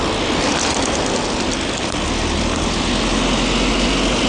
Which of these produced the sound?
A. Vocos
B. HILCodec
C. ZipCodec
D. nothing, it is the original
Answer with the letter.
D